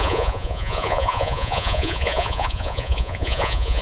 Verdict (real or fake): fake